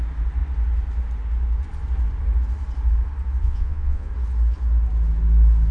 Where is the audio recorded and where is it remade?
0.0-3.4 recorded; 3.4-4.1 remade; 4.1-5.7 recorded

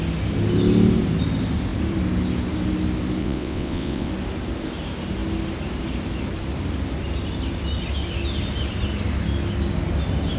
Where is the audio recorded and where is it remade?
0.0-3.2 recorded; 3.2-4.1 remade; 4.1-10.4 recorded

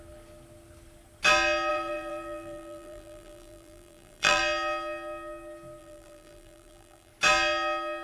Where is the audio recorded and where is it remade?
0.0-1.7 recorded; 1.7-4.4 remade; 4.4-5.8 recorded; 5.8-7.1 remade; 7.1-8.0 recorded

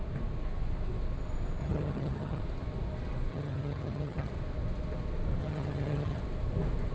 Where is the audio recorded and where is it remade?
0.0-1.6 recorded; 1.6-2.4 remade; 2.4-3.3 recorded; 3.3-4.3 remade; 4.3-5.4 recorded; 5.4-6.2 remade; 6.2-6.9 recorded

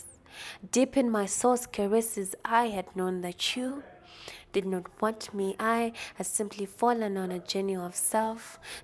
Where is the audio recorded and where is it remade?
0.0-4.4 recorded; 4.4-5.6 remade; 5.6-7.9 recorded; 7.9-8.8 remade

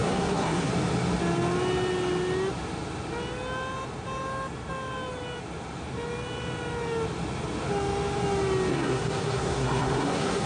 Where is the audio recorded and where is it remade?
0.0-0.7 remade; 0.7-8.7 recorded; 8.7-10.5 remade

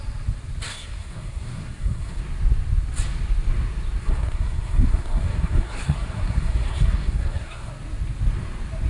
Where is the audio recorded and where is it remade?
0.0-0.7 recorded; 0.7-2.2 remade; 2.2-4.0 recorded; 4.0-7.7 remade; 7.7-8.9 recorded

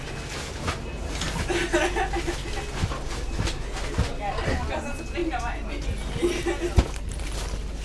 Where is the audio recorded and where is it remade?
0.0-7.8 recorded